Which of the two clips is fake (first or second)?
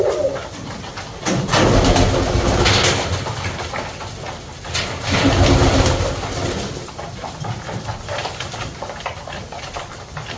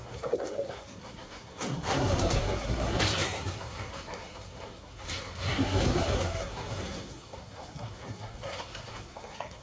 second